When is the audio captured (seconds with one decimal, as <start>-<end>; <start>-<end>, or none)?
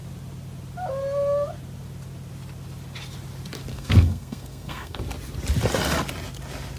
0.0-3.7; 5.0-6.8